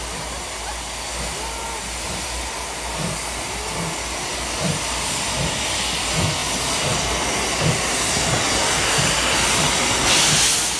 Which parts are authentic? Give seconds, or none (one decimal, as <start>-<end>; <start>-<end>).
0.0-10.8